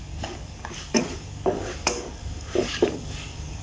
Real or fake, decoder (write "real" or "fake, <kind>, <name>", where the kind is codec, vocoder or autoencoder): fake, codec, DAC